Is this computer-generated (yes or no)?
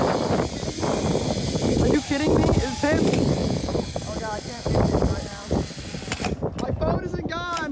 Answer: no